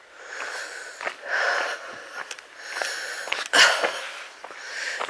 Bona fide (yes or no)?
yes